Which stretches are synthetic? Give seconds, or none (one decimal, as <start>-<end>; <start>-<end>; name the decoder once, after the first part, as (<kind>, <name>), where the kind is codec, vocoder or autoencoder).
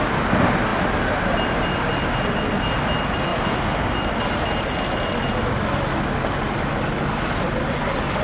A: none